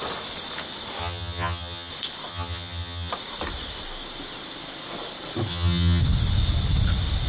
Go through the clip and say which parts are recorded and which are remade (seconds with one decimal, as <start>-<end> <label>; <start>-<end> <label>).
0.0-1.0 recorded; 1.0-1.9 remade; 1.9-2.3 recorded; 2.3-3.1 remade; 3.1-5.5 recorded; 5.5-6.0 remade; 6.0-7.3 recorded